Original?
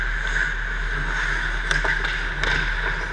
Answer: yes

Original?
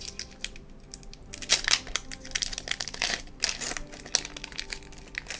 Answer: yes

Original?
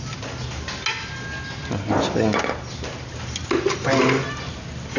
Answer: yes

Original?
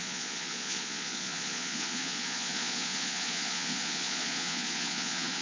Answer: no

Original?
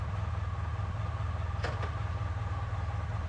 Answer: yes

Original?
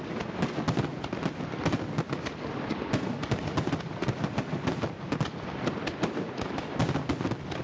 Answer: yes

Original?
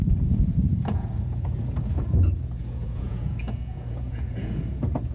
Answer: no